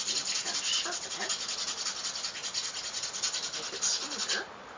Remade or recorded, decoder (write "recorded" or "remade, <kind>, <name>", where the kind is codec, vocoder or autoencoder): recorded